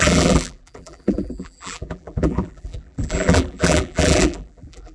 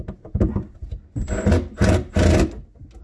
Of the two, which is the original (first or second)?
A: second